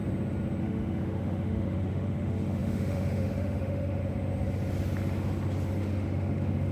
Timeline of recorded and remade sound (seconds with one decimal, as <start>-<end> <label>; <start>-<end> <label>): 0.0-0.6 recorded; 0.6-4.0 remade; 4.0-5.8 recorded; 5.8-6.7 remade